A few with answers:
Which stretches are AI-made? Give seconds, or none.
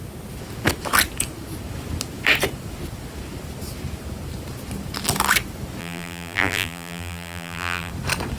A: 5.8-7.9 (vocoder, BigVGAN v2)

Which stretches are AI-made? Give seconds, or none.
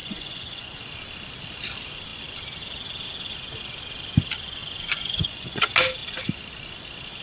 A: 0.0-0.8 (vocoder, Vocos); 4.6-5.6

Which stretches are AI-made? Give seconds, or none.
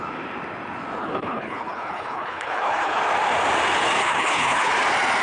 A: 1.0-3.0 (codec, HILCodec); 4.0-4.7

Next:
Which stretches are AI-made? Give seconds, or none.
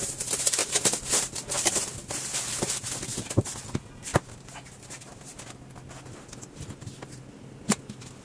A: 0.0-0.6 (vocoder, BigVGAN v2); 1.2-4.1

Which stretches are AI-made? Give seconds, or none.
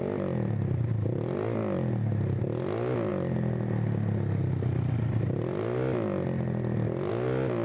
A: none